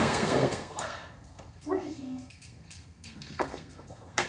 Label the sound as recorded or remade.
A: remade